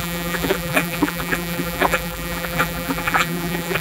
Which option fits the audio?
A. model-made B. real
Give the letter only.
A